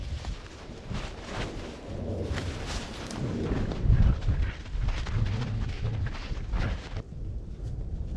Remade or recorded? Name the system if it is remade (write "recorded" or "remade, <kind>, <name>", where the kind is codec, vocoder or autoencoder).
recorded